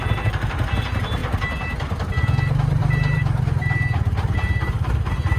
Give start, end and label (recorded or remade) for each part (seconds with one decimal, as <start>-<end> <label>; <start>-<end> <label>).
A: 0.0-2.8 recorded; 2.8-3.4 remade; 3.4-5.4 recorded

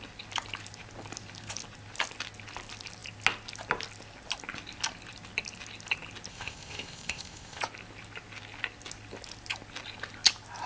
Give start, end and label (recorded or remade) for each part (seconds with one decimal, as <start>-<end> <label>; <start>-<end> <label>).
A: 0.0-6.3 recorded; 6.3-7.6 remade; 7.6-10.7 recorded

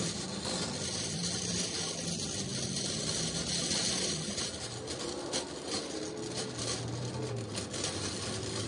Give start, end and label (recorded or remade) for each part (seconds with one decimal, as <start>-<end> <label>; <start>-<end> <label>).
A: 0.0-8.7 recorded

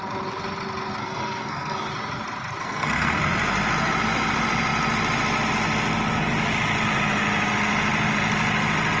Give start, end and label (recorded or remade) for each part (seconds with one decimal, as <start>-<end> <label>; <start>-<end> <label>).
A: 0.0-1.0 recorded; 1.0-1.9 remade; 1.9-2.6 recorded; 2.6-3.2 remade; 3.2-9.0 recorded

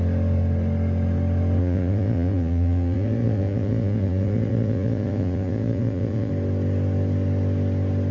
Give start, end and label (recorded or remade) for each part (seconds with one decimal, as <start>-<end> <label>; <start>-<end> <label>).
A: 0.0-1.6 recorded; 1.6-6.3 remade; 6.3-8.1 recorded